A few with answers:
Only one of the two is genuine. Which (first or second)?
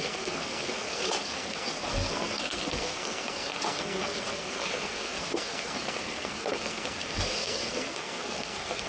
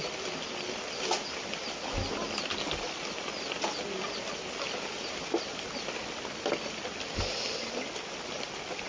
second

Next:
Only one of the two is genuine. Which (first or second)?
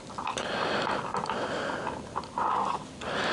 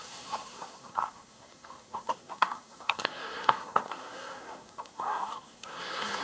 first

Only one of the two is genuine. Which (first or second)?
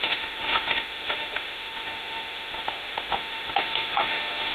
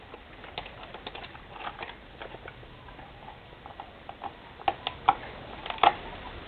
second